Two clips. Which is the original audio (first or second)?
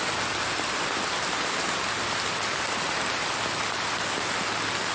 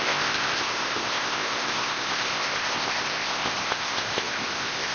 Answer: first